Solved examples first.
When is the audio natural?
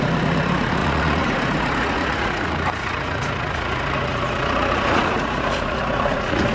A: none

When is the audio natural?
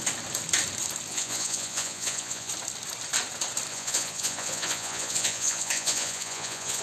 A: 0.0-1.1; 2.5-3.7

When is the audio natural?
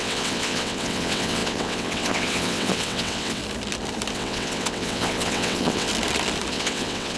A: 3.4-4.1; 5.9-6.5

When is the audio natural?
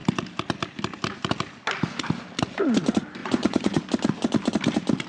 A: 0.0-3.2; 3.8-5.1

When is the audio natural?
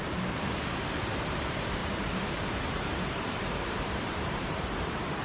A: none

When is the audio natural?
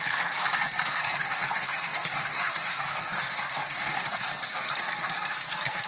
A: none